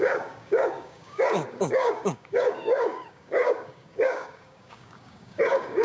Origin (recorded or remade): remade